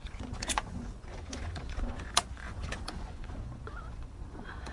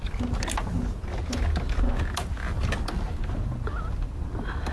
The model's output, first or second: first